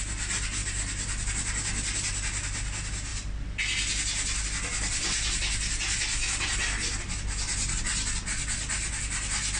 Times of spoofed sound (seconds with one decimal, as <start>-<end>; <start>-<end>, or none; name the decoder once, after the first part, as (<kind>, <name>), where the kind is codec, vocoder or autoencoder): none